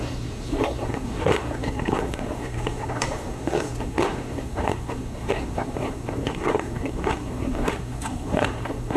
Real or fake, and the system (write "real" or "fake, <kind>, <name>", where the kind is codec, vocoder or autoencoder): fake, codec, SNAC